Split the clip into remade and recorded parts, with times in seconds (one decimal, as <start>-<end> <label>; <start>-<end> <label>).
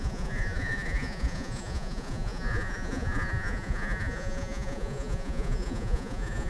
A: 0.0-6.5 remade